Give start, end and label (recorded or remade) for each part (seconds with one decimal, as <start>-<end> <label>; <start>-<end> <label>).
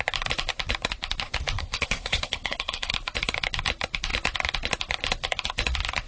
0.0-1.6 recorded; 1.6-2.9 remade; 2.9-6.1 recorded